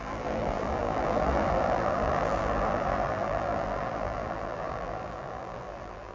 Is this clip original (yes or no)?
no